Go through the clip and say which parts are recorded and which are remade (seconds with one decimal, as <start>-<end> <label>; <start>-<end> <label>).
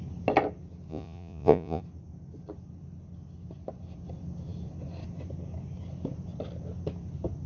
0.0-0.9 recorded; 0.9-1.8 remade; 1.8-7.5 recorded